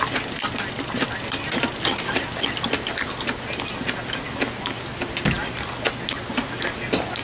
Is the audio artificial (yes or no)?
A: no